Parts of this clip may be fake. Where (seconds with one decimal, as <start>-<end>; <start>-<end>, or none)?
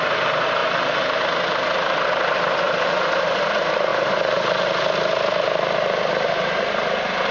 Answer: none